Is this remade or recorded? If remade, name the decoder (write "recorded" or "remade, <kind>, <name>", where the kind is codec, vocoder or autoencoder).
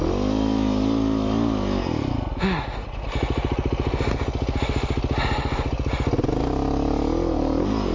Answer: recorded